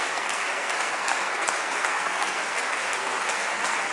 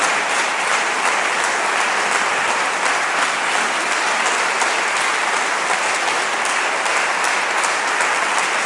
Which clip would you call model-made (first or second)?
first